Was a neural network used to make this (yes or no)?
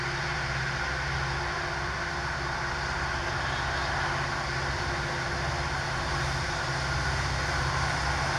no